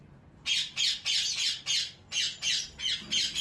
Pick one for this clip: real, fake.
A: real